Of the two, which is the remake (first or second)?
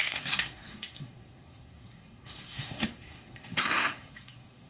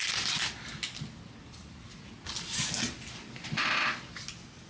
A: first